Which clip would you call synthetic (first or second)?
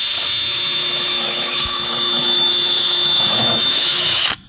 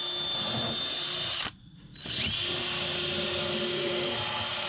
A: first